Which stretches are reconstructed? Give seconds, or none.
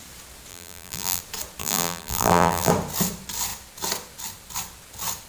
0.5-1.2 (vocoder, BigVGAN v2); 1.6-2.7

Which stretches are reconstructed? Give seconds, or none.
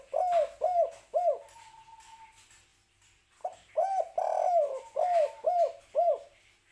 none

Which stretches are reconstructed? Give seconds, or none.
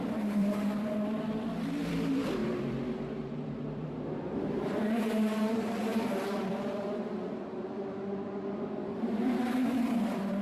0.0-10.4 (vocoder, BigVGAN v2)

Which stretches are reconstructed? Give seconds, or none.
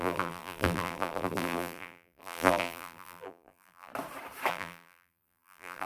0.0-3.9 (vocoder, BigVGAN v2); 4.5-5.9